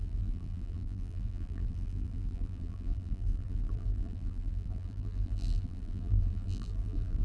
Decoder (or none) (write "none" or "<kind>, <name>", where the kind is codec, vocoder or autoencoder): vocoder, BigVGAN v2